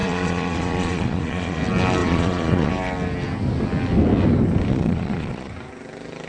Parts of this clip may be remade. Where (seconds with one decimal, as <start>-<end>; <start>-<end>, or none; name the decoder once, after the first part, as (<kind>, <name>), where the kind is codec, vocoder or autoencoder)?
0.0-1.6 (vocoder, Vocos); 2.0-2.7; 4.7-5.5